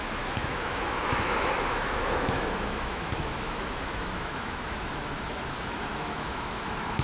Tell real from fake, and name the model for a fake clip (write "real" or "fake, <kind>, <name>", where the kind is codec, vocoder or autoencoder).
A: fake, autoencoder, DAC-VAE